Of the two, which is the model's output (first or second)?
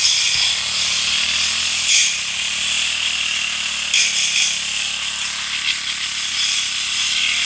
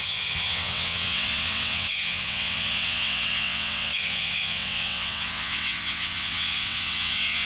second